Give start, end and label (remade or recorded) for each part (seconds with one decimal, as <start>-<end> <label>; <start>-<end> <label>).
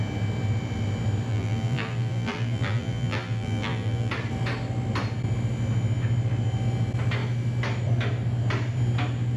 0.0-1.3 recorded; 1.3-4.1 remade; 4.1-9.4 recorded